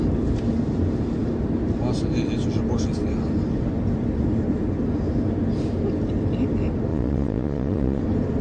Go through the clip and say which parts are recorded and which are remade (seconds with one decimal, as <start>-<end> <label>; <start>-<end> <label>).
0.0-6.9 recorded; 6.9-8.0 remade; 8.0-8.4 recorded